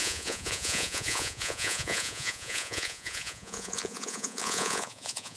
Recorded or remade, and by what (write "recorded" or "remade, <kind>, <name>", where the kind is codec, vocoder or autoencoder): remade, vocoder, Vocos